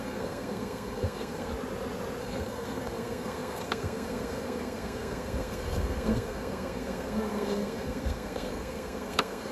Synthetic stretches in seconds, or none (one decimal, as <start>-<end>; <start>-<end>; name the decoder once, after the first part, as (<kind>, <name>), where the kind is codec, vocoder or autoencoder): 0.0-1.5 (codec, SNAC); 2.2-9.5